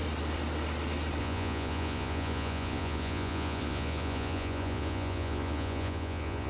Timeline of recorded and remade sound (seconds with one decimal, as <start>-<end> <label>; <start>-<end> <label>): 0.0-1.2 recorded; 1.2-6.5 remade